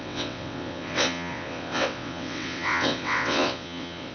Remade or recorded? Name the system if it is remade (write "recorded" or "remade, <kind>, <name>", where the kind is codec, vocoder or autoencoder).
remade, vocoder, WaveNeXt